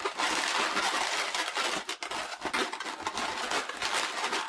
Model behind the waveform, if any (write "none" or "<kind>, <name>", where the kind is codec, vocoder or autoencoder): none